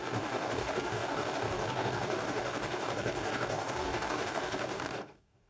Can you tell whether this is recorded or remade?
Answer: remade